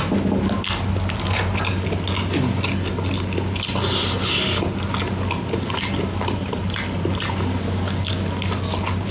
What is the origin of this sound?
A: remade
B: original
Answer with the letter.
B